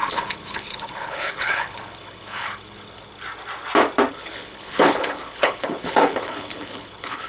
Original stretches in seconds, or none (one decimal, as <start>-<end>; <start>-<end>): 3.1-4.1